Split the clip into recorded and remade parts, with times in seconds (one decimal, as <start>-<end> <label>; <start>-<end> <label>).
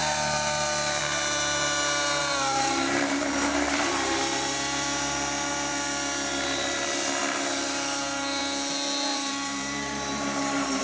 0.0-2.2 recorded; 2.2-4.2 remade; 4.2-7.2 recorded; 7.2-8.4 remade; 8.4-9.1 recorded; 9.1-10.8 remade